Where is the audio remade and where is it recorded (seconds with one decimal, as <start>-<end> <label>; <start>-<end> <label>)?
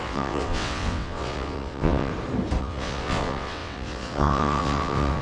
0.0-2.1 remade; 2.1-2.6 recorded; 2.6-5.2 remade